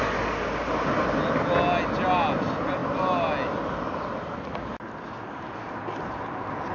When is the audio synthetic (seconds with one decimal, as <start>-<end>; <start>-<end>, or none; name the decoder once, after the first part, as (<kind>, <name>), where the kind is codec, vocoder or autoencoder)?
none